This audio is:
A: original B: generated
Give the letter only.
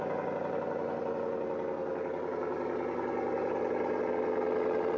A